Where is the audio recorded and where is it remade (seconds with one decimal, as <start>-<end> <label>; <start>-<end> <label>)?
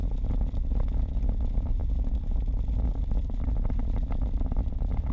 0.0-5.1 recorded